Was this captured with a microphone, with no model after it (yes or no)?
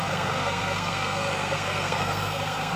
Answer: no